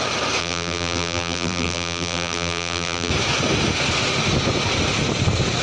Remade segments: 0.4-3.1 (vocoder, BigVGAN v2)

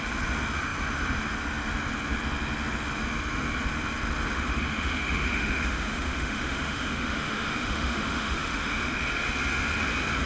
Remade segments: 4.3-8.9 (autoencoder, DAC-VAE)